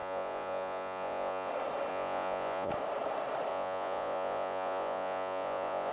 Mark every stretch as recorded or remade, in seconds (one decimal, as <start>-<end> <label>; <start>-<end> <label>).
0.0-1.5 remade; 1.5-1.9 recorded; 1.9-2.7 remade; 2.7-3.5 recorded; 3.5-5.9 remade